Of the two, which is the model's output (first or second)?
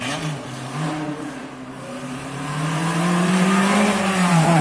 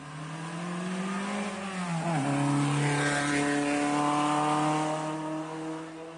first